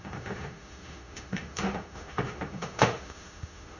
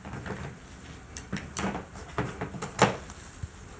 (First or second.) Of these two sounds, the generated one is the first